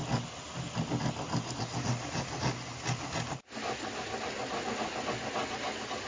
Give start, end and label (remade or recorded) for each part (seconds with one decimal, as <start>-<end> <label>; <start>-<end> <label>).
0.0-6.1 recorded